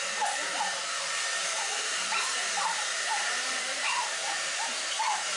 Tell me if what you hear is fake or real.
fake